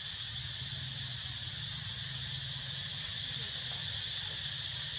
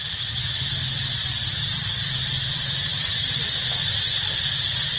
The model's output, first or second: second